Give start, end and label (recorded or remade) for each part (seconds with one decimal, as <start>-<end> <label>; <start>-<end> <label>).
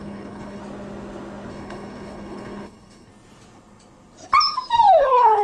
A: 0.0-0.6 remade; 0.6-1.5 recorded; 1.5-3.1 remade; 3.1-5.0 recorded; 5.0-5.4 remade